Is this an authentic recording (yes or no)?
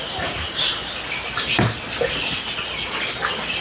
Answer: yes